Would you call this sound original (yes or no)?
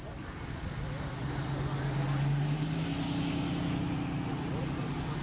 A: yes